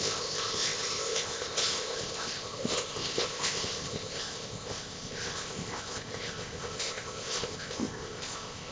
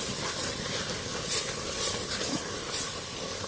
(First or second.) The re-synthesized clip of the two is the first